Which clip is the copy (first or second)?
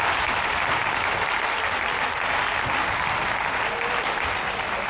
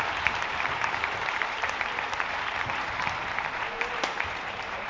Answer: second